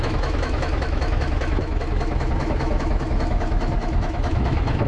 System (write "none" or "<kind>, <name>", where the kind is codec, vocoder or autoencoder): autoencoder, DAC-VAE